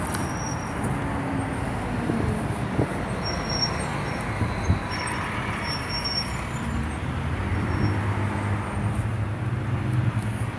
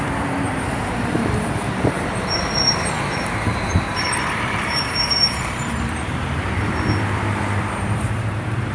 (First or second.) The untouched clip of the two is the first